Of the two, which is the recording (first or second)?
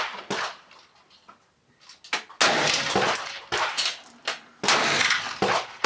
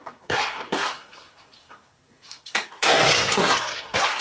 first